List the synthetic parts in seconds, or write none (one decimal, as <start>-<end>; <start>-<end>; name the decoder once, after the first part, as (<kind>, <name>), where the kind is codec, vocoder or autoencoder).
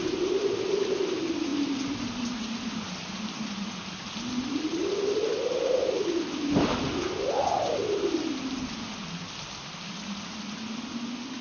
none